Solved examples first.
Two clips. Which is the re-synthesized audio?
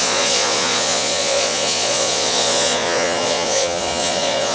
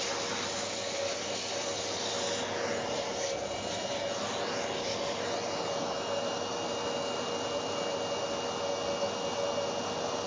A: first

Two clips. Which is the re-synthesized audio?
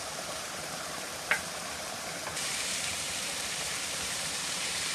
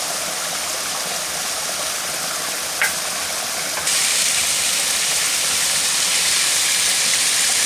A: first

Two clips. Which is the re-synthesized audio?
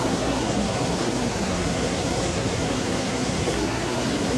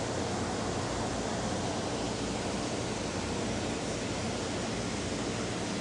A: first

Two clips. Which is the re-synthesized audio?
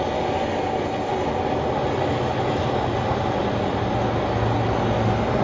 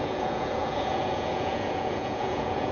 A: second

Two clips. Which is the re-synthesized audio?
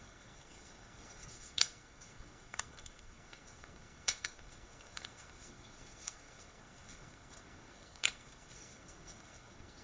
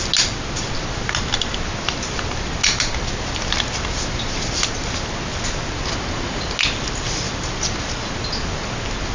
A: first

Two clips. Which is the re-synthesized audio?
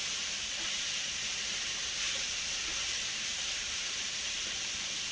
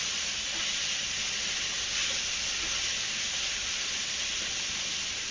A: first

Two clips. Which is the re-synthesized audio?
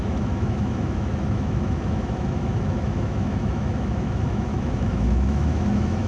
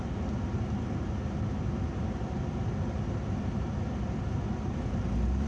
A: first